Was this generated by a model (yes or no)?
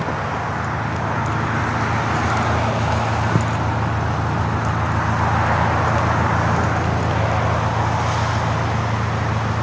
no